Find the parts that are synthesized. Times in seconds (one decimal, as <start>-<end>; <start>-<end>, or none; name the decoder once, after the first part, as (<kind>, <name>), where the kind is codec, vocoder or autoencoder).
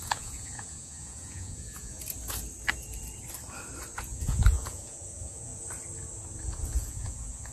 0.0-2.0 (vocoder, Vocos); 4.0-5.5; 6.5-7.5